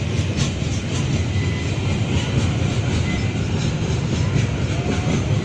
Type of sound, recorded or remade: recorded